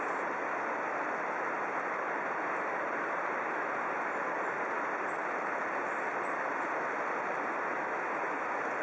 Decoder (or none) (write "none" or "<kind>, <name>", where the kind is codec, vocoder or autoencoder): none